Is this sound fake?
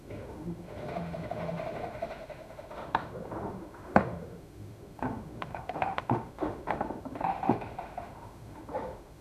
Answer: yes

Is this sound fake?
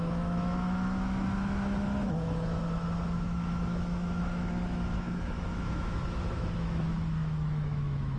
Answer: yes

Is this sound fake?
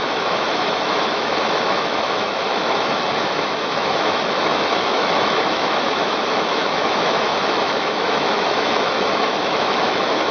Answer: yes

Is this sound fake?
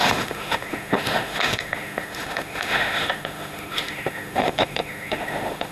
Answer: yes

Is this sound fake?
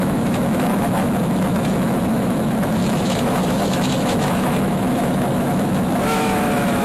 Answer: yes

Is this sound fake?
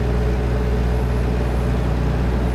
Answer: no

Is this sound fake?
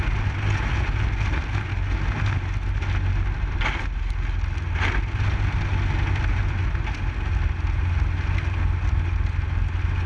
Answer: no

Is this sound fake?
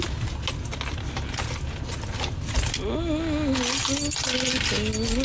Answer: no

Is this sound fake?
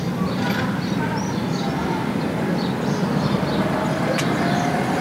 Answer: no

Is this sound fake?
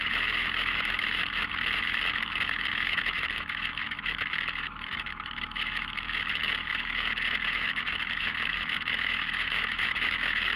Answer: yes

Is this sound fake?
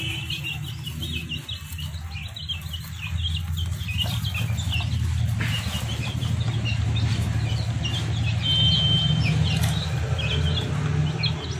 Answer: no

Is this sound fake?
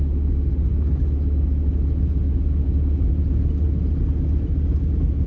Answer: no